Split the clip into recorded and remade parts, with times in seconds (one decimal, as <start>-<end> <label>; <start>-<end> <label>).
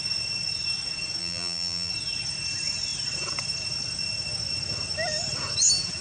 0.0-1.2 recorded; 1.2-1.9 remade; 1.9-6.0 recorded